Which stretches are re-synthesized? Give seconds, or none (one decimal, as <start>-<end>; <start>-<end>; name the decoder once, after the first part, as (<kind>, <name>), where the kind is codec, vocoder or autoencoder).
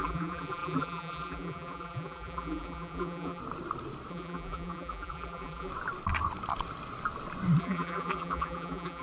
0.0-3.4 (vocoder, BigVGAN v2); 4.1-5.7; 7.6-9.0